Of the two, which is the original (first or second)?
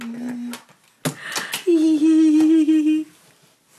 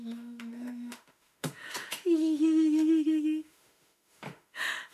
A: first